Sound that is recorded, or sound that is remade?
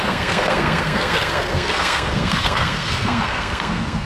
remade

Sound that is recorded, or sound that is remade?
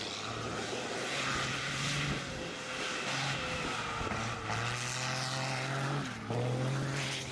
recorded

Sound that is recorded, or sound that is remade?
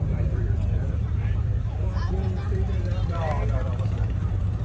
remade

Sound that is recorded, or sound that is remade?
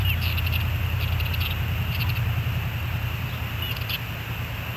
recorded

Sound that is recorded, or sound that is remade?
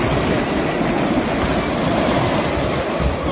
recorded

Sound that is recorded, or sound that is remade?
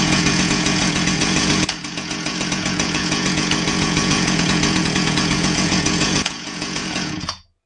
remade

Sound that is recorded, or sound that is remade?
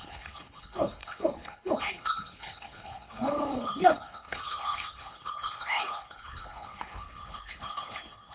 remade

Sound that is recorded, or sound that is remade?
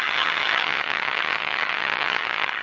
remade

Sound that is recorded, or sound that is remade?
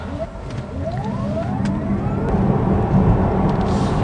recorded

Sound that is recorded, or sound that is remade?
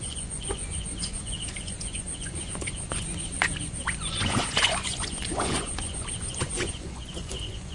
remade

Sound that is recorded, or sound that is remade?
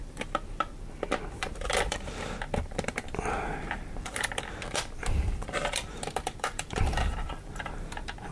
remade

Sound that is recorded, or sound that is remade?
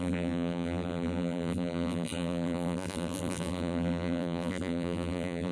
remade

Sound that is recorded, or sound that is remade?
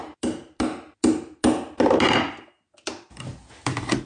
recorded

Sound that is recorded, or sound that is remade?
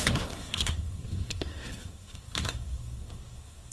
remade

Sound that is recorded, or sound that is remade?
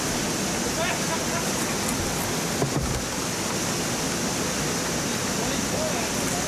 recorded